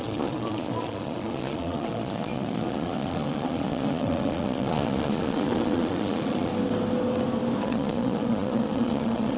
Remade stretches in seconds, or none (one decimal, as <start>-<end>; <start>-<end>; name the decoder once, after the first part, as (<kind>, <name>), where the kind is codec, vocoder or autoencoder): 0.0-6.5 (vocoder, Vocos); 7.6-9.4